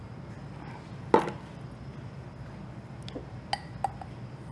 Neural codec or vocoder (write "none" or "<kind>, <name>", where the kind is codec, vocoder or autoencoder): none